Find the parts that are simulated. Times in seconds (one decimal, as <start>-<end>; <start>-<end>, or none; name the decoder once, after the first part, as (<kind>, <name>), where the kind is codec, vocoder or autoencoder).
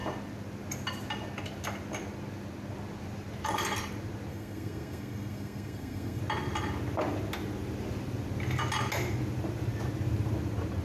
4.3-6.2 (codec, SNAC)